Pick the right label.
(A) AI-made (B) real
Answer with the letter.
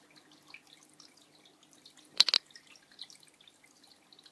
B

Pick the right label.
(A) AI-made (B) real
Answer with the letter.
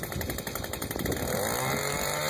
B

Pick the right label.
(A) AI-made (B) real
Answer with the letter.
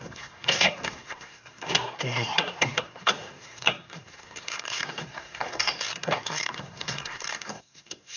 A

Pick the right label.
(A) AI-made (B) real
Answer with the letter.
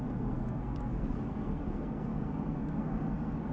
A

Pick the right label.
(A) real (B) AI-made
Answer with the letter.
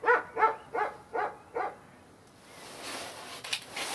A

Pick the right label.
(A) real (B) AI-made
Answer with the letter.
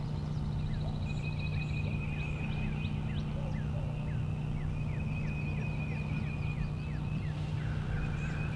A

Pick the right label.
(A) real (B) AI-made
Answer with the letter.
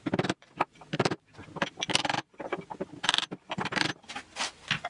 A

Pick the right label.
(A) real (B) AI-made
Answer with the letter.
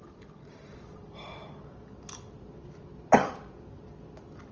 A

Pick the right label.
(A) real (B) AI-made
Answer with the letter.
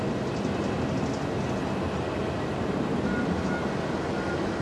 A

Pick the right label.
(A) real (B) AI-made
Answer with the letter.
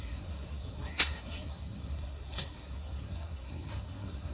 B